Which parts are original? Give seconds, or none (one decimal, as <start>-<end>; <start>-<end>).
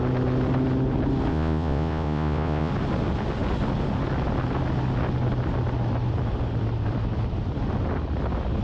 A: 0.0-1.3; 2.7-8.6